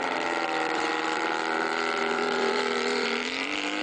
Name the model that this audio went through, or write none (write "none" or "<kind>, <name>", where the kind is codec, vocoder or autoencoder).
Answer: vocoder, BigVGAN v2